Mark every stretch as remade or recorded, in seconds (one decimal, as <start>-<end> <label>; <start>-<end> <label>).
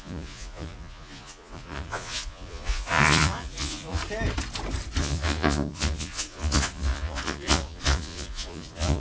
0.0-4.0 remade; 4.0-5.0 recorded; 5.0-9.0 remade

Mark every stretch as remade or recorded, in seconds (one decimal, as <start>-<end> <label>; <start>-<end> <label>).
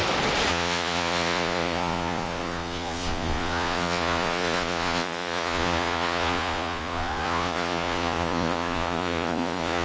0.0-0.5 recorded; 0.5-9.8 remade